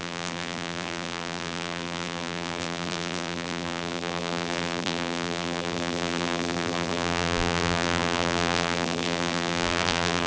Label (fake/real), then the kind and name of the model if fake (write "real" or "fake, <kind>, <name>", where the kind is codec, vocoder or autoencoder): fake, vocoder, BigVGAN v2